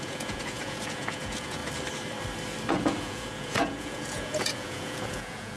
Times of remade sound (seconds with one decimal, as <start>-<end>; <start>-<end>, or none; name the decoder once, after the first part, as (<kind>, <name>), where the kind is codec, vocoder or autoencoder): 0.0-1.6 (vocoder, Vocos); 2.7-5.6